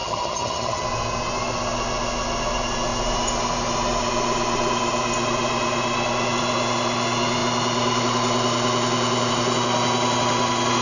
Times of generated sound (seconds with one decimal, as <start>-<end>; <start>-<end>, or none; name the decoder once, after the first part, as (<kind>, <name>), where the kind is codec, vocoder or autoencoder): 0.0-0.8 (vocoder, HiFi-GAN)